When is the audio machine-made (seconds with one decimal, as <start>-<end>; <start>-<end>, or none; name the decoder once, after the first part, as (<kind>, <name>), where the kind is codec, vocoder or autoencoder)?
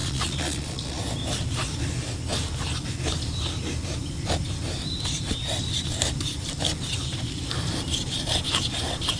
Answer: 0.0-1.0 (vocoder, Vocos)